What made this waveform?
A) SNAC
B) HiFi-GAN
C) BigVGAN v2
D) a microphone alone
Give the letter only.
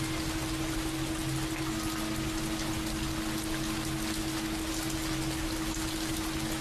D